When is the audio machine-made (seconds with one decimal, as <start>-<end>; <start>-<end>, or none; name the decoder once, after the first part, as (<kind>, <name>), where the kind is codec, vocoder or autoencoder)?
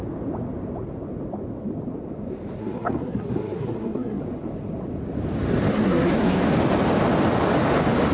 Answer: 2.6-4.2 (codec, SNAC); 5.7-6.4